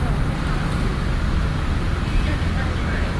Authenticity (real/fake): real